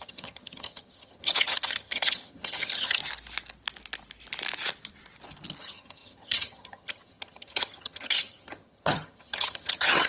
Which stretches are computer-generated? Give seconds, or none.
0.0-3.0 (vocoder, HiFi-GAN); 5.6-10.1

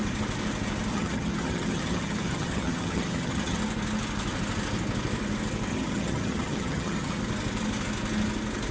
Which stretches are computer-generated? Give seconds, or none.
0.9-3.6 (vocoder, HiFi-GAN); 5.7-7.2

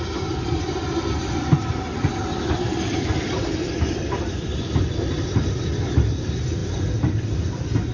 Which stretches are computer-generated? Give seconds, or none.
none

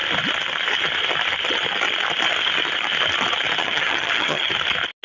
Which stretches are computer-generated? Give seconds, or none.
3.6-4.5 (vocoder, HiFi-GAN)